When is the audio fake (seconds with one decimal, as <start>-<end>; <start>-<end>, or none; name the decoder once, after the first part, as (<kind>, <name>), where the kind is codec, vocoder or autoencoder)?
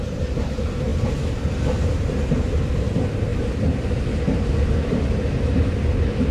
0.0-0.9 (vocoder, BigVGAN v2); 1.5-6.3